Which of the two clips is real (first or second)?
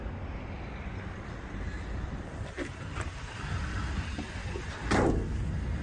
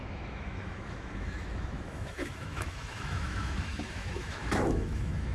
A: first